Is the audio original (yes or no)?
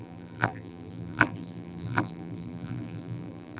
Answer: no